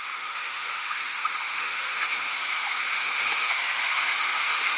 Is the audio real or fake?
fake